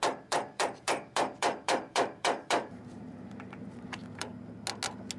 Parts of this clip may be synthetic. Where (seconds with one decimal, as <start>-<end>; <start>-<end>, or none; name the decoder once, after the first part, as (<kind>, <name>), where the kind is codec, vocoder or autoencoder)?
0.0-4.3 (vocoder, BigVGAN v2)